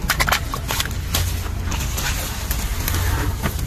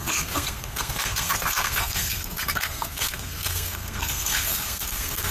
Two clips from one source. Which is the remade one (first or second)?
second